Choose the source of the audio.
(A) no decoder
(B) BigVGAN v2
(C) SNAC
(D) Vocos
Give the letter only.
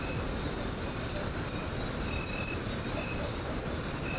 A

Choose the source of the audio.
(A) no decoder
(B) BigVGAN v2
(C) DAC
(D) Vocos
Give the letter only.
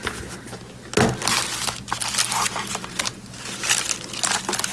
A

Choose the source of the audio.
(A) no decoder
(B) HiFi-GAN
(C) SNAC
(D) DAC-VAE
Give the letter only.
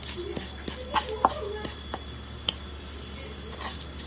A